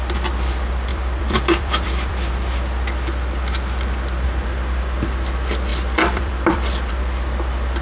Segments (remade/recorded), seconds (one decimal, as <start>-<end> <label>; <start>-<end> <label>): 0.0-0.9 recorded; 0.9-2.3 remade; 2.3-5.7 recorded; 5.7-6.9 remade; 6.9-7.8 recorded